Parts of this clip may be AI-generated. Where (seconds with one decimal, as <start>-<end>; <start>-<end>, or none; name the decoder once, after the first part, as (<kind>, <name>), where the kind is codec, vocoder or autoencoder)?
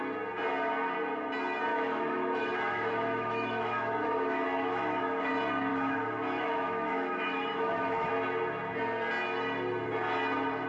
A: 1.7-5.3 (autoencoder, DAC-VAE); 5.7-8.1